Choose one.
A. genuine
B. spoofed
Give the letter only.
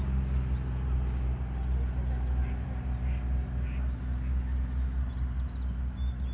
A